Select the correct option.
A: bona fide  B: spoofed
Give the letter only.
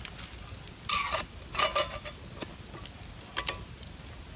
A